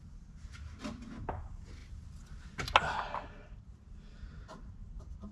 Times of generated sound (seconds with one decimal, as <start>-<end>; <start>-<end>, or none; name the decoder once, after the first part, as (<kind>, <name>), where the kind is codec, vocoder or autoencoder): none